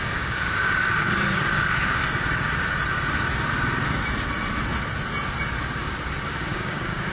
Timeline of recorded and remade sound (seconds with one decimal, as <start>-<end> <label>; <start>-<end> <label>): 0.0-2.0 remade; 2.0-6.3 recorded; 6.3-7.1 remade